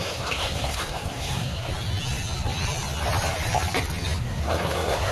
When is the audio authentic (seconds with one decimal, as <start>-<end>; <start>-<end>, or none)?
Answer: 1.7-4.2